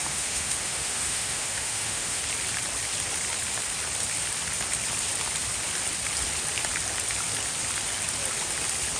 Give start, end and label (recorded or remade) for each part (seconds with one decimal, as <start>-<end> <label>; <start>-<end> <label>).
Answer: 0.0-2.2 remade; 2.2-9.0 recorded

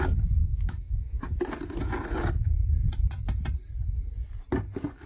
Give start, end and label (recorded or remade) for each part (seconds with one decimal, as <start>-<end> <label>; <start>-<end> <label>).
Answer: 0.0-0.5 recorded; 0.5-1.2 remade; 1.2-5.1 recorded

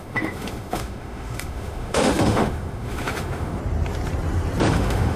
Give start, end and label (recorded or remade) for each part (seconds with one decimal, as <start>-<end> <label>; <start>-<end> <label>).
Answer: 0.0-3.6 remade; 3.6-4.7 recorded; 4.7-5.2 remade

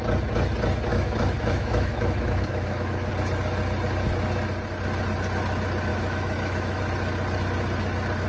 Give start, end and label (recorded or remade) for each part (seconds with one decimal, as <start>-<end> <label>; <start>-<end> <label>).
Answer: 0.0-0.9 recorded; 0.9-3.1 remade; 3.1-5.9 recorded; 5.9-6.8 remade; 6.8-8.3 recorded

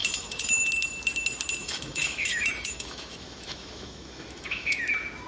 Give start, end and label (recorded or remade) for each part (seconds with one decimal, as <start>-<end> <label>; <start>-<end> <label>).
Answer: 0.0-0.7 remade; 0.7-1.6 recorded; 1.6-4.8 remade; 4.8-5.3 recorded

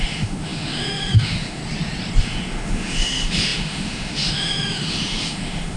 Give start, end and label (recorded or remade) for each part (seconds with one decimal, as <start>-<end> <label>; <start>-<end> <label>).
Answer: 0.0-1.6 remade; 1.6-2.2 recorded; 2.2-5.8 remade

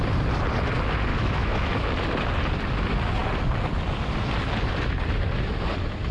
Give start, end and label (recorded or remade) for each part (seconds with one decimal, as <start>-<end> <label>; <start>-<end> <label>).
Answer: 0.0-1.1 recorded; 1.1-1.9 remade; 1.9-6.1 recorded